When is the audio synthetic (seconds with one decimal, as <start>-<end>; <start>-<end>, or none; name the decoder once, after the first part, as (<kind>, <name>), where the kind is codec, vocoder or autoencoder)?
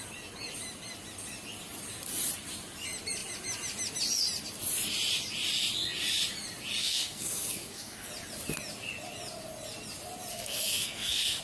6.8-8.1 (codec, SNAC); 10.3-11.4